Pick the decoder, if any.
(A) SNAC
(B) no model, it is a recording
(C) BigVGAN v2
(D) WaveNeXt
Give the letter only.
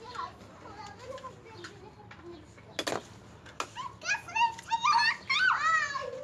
B